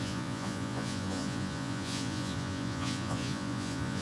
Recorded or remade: remade